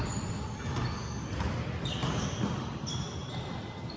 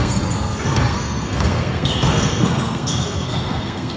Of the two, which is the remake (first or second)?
second